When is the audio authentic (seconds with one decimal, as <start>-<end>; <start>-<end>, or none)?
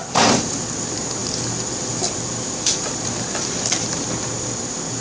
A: 0.6-1.2; 4.1-5.0